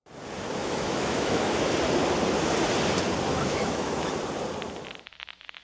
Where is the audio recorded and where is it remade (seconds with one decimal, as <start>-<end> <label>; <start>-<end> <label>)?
0.0-0.6 recorded; 0.6-1.7 remade; 1.7-3.3 recorded; 3.3-4.1 remade; 4.1-5.6 recorded